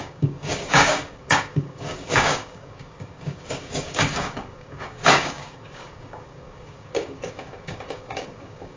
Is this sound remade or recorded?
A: remade